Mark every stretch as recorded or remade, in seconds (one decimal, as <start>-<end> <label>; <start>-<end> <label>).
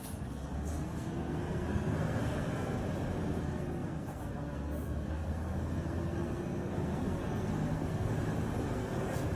0.0-2.8 remade; 2.8-3.4 recorded; 3.4-8.1 remade; 8.1-8.6 recorded; 8.6-9.4 remade